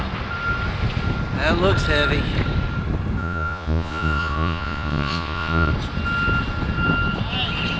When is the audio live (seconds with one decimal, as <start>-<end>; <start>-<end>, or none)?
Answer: 0.0-3.2; 5.7-7.8